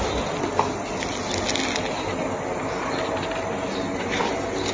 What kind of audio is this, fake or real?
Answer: real